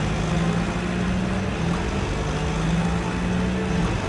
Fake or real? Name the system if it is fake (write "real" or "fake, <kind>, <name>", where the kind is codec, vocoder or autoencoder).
real